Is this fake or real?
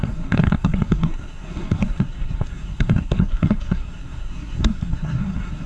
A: fake